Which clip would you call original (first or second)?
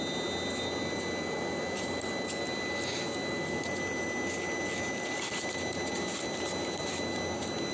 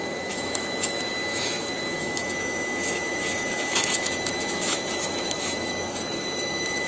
first